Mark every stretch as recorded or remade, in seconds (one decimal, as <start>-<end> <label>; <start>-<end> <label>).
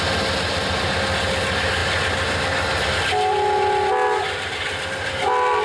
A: 0.0-5.6 recorded